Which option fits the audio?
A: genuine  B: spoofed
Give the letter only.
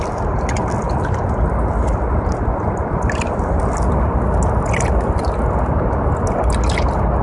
A